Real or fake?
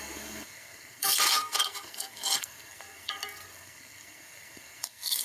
fake